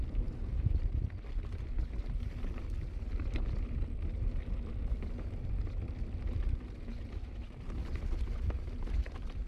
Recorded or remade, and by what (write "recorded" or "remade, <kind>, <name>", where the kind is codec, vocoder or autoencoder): remade, vocoder, BigVGAN v2